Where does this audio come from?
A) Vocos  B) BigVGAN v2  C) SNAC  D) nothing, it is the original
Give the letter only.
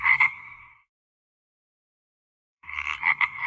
C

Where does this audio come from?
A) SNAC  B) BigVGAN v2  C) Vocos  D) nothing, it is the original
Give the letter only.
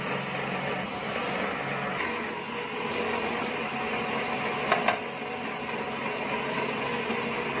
D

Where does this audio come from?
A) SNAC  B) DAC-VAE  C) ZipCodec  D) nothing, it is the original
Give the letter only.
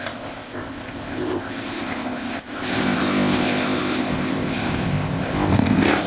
C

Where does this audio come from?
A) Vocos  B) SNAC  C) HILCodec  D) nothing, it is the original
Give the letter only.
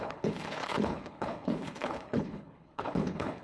C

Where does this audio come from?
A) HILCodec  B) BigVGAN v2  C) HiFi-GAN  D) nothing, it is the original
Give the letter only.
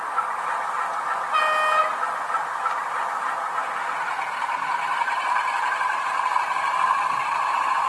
D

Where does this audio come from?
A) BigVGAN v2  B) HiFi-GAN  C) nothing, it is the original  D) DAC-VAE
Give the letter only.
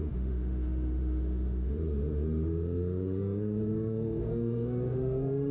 D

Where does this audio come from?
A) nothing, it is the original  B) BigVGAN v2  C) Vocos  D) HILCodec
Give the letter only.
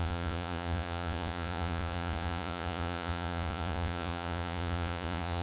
C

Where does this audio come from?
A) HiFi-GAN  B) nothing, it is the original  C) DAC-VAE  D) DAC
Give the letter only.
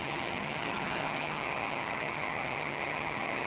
A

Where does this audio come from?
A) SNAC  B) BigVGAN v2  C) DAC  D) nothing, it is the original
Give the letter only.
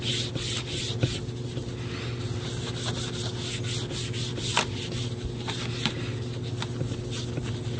D